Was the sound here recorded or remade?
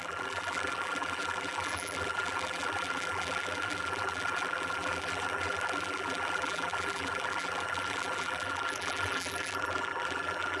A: remade